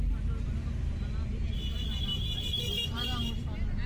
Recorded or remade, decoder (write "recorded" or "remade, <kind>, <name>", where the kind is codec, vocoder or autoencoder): recorded